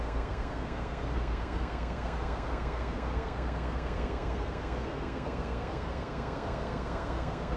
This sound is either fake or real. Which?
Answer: fake